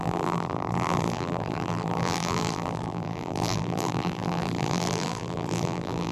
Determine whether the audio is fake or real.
fake